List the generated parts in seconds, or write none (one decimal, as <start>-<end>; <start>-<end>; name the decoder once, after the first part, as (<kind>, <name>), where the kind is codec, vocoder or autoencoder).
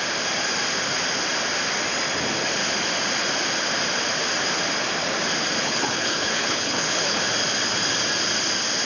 5.6-7.2 (codec, HILCodec)